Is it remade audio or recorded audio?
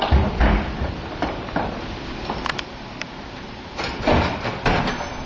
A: remade